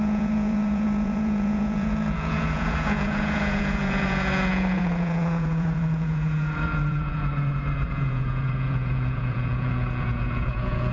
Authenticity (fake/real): fake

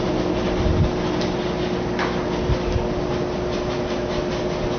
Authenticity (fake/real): real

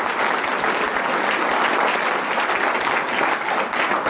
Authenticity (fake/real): real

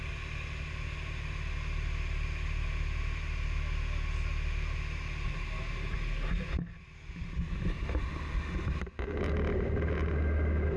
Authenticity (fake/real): real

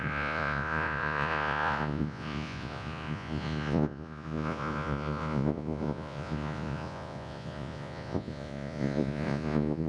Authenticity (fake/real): fake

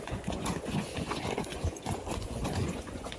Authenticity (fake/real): fake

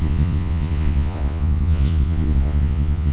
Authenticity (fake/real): fake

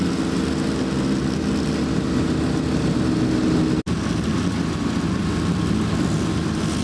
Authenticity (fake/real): real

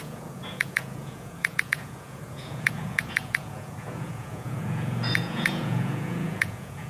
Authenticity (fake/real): fake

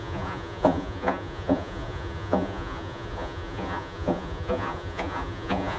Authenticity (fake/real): fake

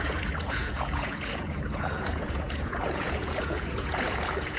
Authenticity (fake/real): fake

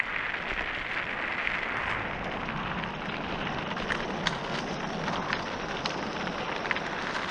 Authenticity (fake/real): real